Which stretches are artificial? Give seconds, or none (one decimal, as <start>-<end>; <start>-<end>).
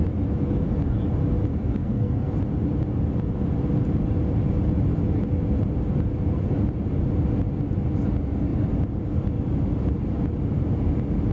1.5-2.3